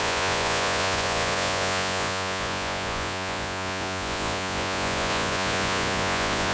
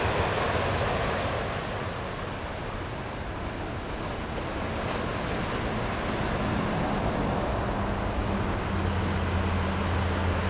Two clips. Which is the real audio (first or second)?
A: second